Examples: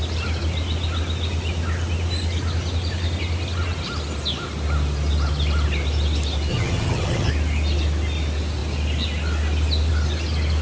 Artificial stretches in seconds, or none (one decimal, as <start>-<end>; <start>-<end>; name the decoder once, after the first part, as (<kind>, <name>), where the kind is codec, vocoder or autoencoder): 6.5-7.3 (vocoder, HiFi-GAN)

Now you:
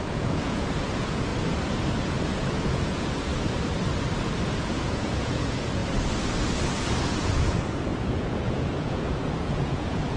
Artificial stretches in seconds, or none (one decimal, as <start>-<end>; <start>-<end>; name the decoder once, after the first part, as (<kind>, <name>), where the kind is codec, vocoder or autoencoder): 0.0-1.3 (vocoder, Vocos); 2.0-3.3; 4.5-5.8; 7.2-10.2

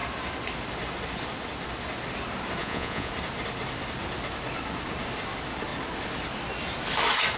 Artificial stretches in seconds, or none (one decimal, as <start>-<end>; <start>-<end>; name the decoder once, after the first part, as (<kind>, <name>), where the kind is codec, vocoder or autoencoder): 2.6-3.1 (vocoder, Vocos)